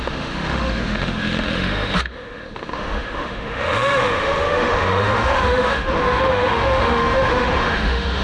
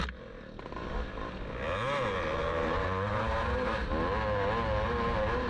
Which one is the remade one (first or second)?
first